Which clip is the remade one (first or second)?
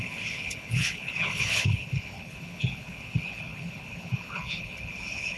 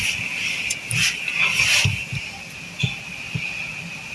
first